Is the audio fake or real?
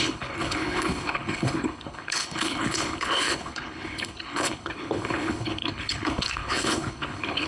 fake